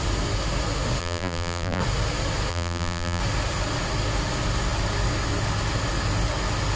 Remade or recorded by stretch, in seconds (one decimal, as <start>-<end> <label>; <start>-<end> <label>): 0.0-1.0 recorded; 1.0-1.8 remade; 1.8-2.5 recorded; 2.5-3.2 remade; 3.2-6.8 recorded